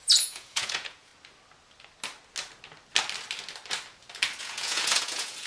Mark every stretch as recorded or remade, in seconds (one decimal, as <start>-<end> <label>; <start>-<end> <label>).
0.0-1.1 remade; 1.1-4.4 recorded; 4.4-5.5 remade